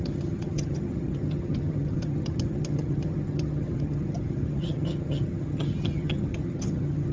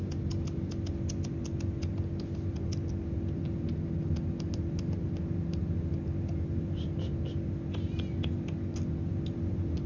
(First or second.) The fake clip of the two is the first